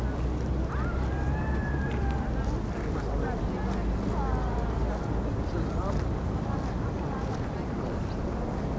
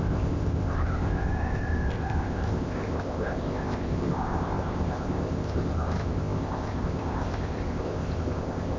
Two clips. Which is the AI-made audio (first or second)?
second